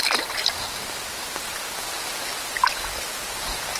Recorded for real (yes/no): yes